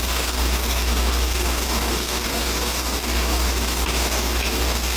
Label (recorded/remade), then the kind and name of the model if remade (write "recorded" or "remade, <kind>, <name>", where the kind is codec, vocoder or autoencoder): remade, codec, DAC